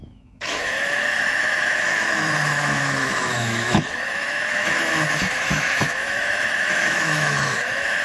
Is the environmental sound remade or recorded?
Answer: remade